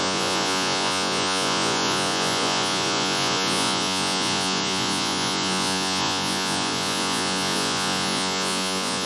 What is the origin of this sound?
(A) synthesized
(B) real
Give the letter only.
A